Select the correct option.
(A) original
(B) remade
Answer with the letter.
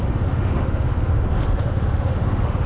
B